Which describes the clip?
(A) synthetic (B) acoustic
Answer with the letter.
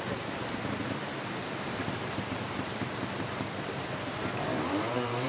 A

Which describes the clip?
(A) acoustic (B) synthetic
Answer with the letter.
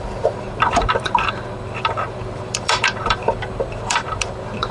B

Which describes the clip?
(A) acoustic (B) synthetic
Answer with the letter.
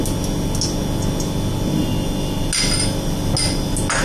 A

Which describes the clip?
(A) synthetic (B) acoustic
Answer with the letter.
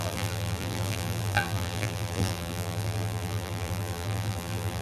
A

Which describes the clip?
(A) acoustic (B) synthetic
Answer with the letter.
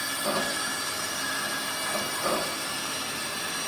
A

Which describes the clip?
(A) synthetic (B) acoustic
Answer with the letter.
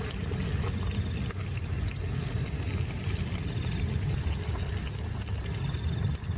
B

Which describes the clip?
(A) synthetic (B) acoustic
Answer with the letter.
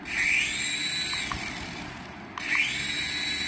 B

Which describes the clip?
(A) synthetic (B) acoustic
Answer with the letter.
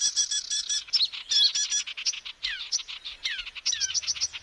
B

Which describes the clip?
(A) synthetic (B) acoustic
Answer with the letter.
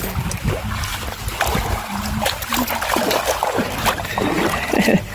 B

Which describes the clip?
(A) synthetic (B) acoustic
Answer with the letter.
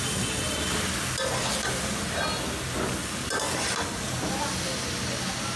B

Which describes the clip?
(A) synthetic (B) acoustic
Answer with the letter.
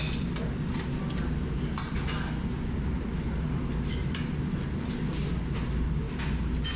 B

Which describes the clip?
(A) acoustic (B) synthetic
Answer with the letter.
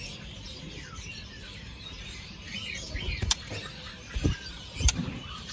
B